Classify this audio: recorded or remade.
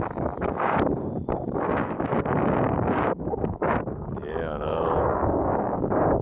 remade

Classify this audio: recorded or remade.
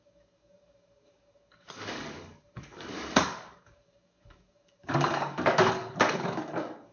remade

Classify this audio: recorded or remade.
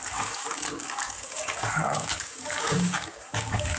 remade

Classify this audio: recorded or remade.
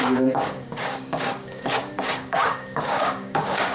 remade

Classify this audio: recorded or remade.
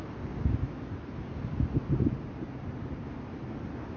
recorded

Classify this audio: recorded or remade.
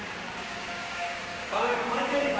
remade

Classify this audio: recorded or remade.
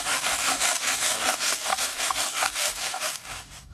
remade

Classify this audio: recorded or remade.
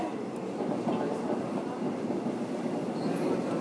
recorded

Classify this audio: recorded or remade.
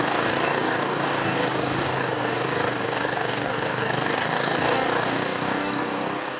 remade